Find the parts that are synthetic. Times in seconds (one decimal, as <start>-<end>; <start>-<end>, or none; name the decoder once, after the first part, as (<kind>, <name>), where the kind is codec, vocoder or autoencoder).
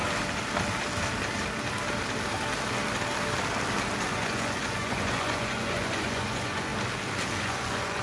4.0-6.7 (vocoder, Vocos); 7.4-8.0